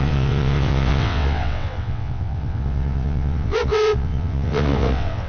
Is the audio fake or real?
fake